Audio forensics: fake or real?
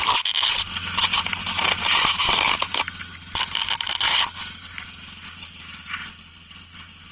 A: real